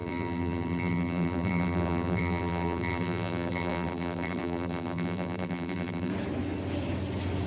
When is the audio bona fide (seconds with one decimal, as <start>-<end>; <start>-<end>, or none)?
6.1-7.5